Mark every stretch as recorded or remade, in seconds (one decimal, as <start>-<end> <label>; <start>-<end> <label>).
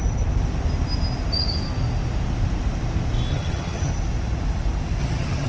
0.0-3.3 recorded; 3.3-3.9 remade; 3.9-5.0 recorded; 5.0-5.5 remade